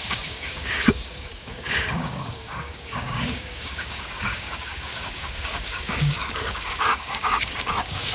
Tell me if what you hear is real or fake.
fake